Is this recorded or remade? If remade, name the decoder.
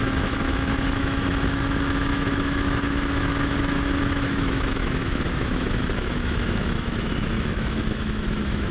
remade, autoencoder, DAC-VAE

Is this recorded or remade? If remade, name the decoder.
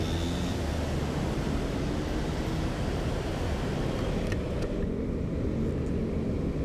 recorded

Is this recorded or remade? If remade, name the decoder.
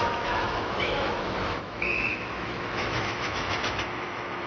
remade, autoencoder, DAC-VAE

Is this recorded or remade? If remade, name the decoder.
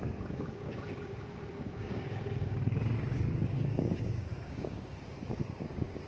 remade, codec, DAC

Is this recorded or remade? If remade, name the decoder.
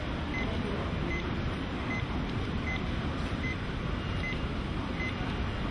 recorded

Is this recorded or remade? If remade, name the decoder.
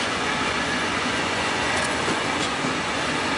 remade, vocoder, Vocos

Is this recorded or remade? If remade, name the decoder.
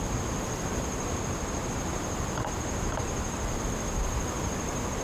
recorded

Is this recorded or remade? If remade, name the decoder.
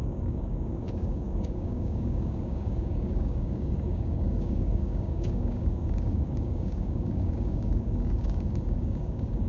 remade, codec, DAC